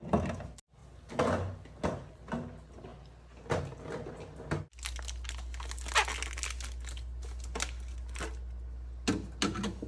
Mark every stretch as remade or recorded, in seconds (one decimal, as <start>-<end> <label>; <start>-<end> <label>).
0.0-9.9 recorded